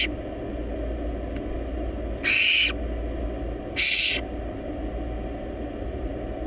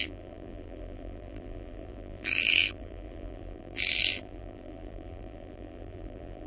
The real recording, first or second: first